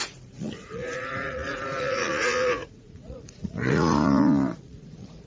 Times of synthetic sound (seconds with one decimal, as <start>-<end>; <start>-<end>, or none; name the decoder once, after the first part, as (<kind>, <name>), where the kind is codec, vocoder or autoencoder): 0.0-5.3 (vocoder, Vocos)

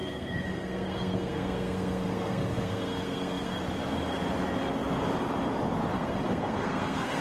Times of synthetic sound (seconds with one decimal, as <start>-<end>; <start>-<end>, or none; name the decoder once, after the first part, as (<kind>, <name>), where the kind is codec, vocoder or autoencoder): 0.0-3.6 (codec, SNAC); 5.9-7.2

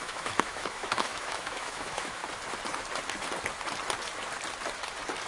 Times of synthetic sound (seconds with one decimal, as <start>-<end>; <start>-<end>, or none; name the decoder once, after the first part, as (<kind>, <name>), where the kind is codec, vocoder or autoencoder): 0.0-2.2 (autoencoder, DAC-VAE)

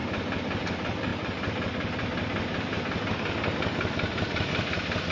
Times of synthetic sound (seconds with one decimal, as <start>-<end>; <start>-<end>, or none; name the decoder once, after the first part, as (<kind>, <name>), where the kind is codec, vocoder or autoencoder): none

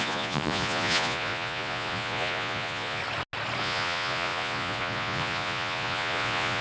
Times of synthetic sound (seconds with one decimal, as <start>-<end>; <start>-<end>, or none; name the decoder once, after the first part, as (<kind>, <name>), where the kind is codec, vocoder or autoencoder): 0.0-3.0 (vocoder, Vocos); 3.6-6.6

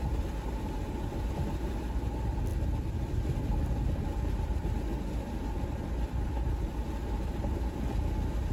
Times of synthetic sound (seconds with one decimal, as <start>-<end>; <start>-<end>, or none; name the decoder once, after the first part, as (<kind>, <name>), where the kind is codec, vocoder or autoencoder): none

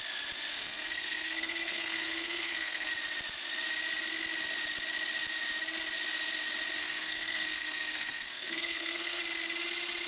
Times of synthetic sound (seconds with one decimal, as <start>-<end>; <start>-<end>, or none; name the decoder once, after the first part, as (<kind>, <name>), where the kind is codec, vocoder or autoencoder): 0.5-2.9 (codec, SNAC); 6.8-9.2

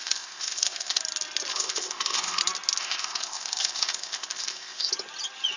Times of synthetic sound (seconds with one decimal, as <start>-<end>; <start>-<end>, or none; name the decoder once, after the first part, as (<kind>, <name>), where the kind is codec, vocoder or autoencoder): 0.0-1.0 (codec, ZipCodec); 1.5-2.4; 2.8-4.9